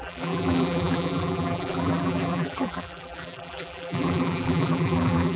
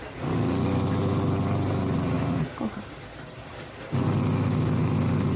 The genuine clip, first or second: second